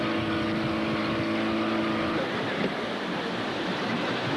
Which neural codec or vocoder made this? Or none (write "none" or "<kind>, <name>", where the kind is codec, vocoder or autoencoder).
vocoder, BigVGAN v2